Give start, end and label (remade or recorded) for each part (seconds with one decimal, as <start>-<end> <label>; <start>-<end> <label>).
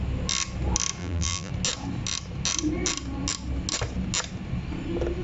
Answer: 0.0-1.0 recorded; 1.0-1.5 remade; 1.5-5.2 recorded